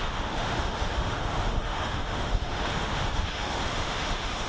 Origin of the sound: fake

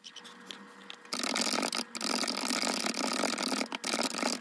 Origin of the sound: real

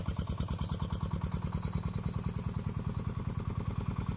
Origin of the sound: real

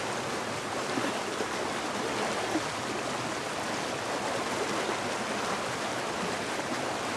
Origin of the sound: real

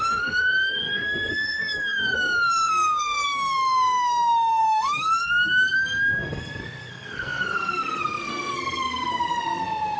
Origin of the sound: fake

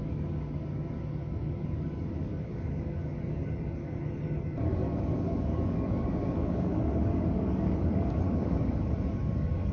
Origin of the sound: fake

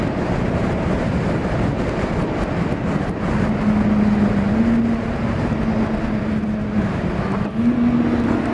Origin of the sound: real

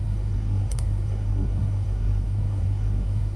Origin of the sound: fake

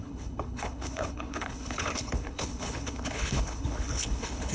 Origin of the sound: fake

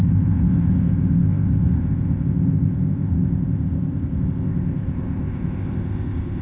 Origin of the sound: fake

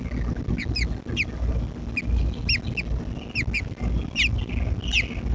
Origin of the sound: real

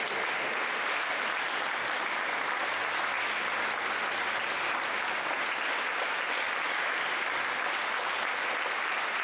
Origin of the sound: real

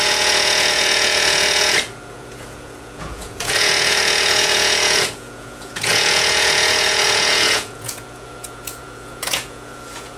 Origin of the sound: fake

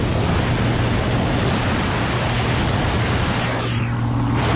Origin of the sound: real